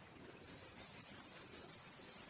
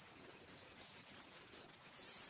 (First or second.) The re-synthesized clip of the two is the second